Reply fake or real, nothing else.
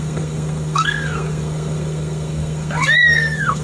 fake